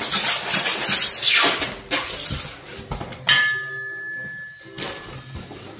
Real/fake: real